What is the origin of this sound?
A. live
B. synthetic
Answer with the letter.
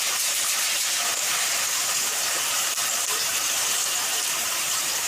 B